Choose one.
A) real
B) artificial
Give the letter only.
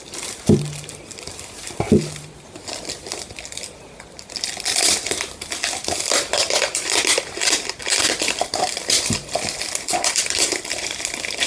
B